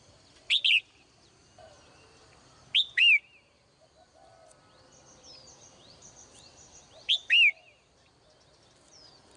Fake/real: real